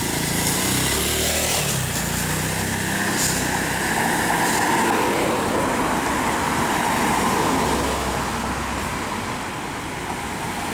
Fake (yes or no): no